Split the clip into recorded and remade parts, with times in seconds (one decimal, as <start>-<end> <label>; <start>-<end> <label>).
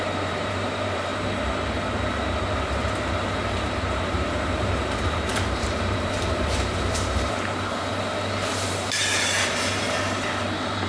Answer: 0.0-1.1 remade; 1.1-2.7 recorded; 2.7-7.9 remade; 7.9-8.5 recorded; 8.5-10.9 remade